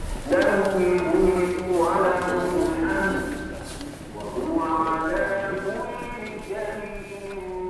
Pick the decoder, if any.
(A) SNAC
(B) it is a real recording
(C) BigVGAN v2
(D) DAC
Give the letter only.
B